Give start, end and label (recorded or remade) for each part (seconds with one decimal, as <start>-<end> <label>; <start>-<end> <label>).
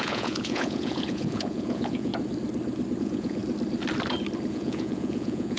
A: 0.0-2.1 remade; 2.1-3.0 recorded; 3.0-3.4 remade; 3.4-4.5 recorded; 4.5-5.6 remade